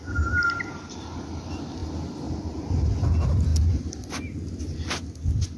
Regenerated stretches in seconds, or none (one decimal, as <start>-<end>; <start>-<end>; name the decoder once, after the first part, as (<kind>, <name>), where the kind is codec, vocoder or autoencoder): none